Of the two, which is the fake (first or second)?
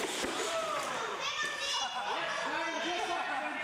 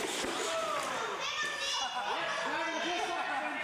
first